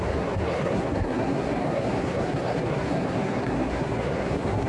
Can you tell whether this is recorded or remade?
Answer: remade